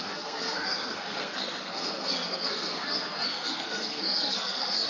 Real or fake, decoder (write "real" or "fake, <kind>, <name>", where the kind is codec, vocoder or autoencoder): fake, codec, SNAC